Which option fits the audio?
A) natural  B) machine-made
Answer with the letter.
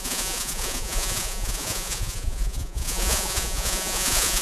B